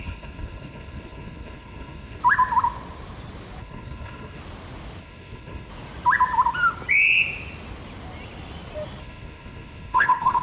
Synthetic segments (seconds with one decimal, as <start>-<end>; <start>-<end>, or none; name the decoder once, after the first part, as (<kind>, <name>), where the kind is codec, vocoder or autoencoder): 0.0-2.2 (codec, HILCodec); 3.6-4.4; 5.0-5.7; 9.0-10.4